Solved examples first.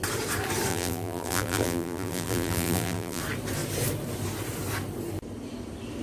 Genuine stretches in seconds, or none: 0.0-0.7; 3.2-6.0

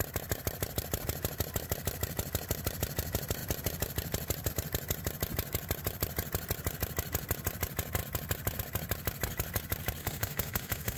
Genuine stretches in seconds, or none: 0.0-10.0

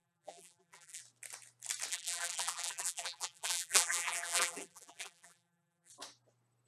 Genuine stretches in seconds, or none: 1.0-1.9; 5.9-6.7

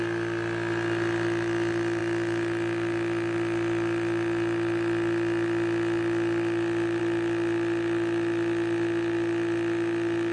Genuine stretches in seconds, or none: 0.0-10.3

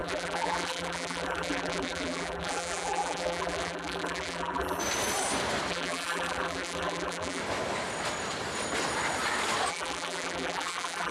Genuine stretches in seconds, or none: 4.8-5.7; 7.4-9.7

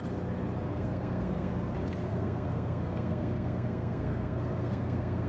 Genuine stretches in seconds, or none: 0.0-0.7; 1.5-2.1

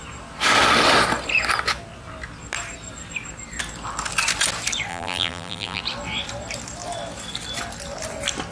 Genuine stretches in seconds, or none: 0.0-4.9; 5.8-8.5

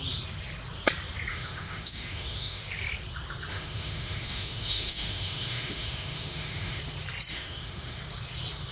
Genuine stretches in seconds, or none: 0.0-1.3; 2.6-3.5; 6.8-7.3; 8.0-8.7